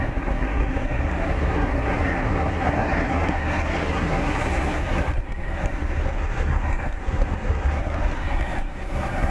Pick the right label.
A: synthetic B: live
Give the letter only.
A